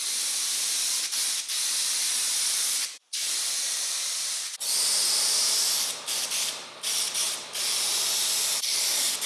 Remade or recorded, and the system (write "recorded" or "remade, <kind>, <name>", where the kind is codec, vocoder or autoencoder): remade, vocoder, BigVGAN v2